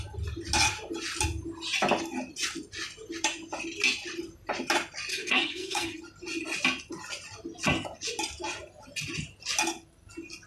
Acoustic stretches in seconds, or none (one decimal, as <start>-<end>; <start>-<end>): 0.0-5.1; 6.0-10.5